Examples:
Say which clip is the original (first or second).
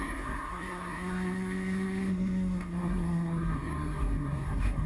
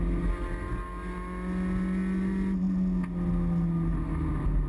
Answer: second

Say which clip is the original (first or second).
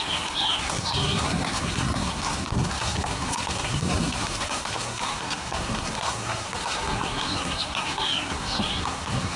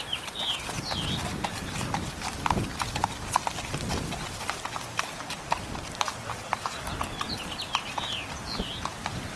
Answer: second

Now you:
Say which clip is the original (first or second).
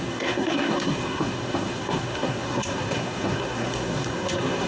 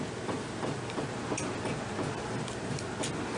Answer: second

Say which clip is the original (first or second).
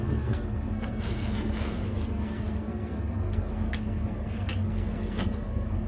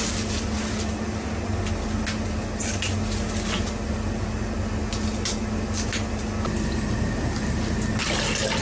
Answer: second